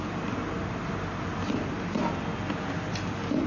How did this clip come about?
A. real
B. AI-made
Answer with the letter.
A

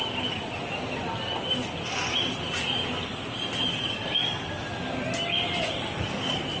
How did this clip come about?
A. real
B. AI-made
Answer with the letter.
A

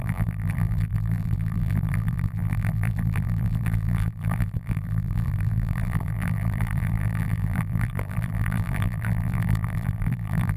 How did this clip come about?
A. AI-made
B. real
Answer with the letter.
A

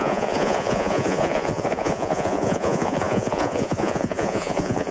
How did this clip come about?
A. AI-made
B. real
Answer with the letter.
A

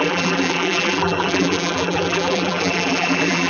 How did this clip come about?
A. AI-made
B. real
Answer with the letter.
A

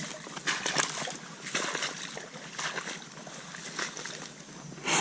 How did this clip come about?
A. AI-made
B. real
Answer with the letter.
B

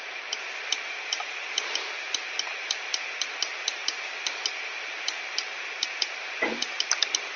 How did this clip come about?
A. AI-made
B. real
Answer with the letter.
A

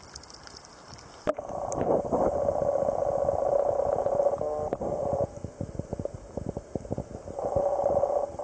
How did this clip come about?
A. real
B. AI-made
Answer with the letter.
A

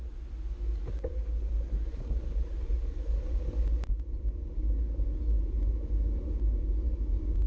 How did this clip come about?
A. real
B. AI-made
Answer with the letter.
A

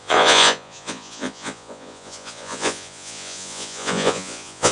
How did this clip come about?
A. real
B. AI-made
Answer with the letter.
B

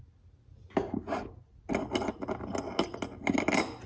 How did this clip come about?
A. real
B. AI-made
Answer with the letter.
A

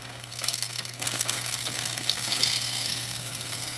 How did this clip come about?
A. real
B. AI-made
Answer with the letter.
B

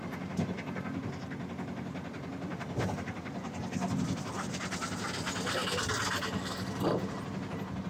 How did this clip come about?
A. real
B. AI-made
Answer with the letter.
A